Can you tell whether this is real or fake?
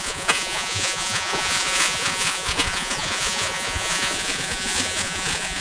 fake